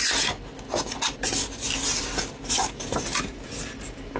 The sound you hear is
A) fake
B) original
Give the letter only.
B